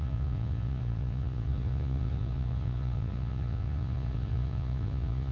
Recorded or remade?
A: remade